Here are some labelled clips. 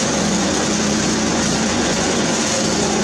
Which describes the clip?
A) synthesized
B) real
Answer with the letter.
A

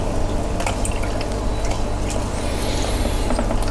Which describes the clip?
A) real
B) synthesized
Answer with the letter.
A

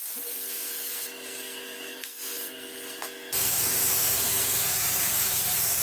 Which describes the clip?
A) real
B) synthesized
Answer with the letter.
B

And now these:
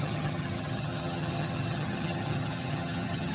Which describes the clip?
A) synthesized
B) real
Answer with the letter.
A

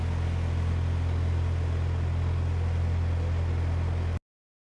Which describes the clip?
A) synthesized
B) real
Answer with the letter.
B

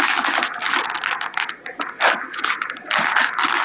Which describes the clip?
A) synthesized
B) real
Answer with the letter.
B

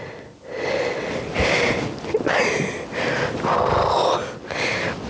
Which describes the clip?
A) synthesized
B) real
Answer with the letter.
B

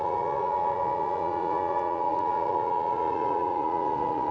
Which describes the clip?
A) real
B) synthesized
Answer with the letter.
B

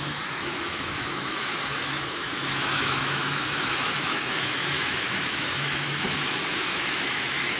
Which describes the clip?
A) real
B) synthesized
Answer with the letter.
B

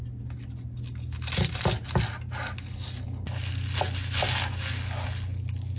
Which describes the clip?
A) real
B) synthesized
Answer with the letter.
A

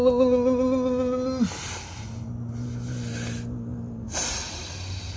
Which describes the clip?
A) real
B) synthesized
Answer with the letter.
A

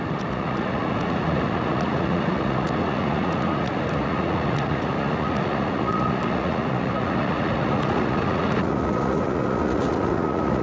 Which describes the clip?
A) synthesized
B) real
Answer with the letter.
A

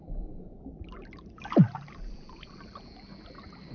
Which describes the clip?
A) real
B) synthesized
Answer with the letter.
A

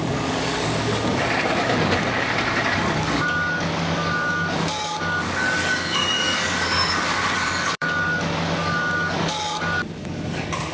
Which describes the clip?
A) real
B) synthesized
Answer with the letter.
B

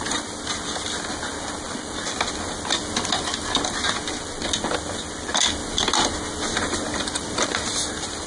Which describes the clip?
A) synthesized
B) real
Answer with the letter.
B